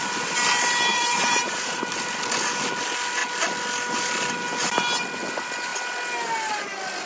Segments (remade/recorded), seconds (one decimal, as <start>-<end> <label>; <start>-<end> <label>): 0.0-0.9 recorded; 0.9-1.8 remade; 1.8-7.1 recorded